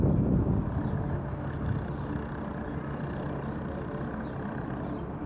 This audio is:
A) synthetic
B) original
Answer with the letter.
B